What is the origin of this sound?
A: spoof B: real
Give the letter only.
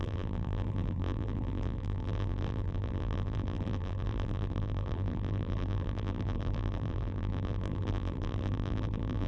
A